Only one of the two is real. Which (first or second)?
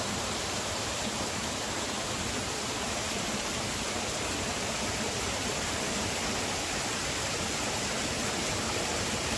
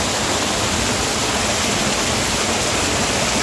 second